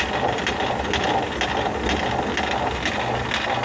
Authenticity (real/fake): real